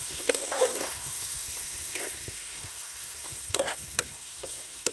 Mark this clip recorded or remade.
remade